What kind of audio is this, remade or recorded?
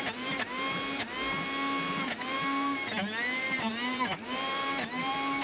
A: recorded